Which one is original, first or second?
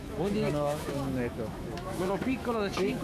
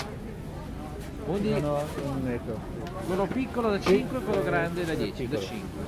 second